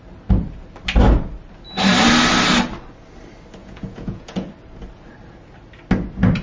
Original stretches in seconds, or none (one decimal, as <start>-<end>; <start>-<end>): 0.0-3.6; 4.5-6.4